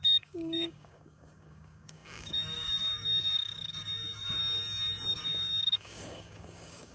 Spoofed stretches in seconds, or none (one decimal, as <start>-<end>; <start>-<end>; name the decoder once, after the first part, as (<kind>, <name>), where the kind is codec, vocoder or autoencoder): 0.0-4.4 (codec, DAC); 5.1-6.9